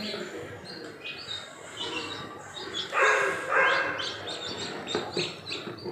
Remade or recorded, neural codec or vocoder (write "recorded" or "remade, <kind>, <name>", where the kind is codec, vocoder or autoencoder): recorded